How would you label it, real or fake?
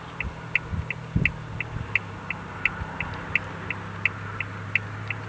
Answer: real